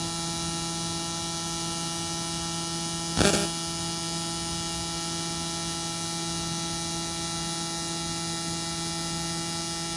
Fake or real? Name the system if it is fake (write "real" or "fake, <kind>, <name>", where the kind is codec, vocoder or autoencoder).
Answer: real